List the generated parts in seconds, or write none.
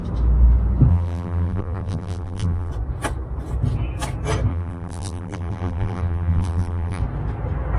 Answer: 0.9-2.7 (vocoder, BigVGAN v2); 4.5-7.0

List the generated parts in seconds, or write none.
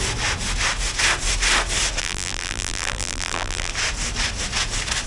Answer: 2.0-3.7 (vocoder, BigVGAN v2)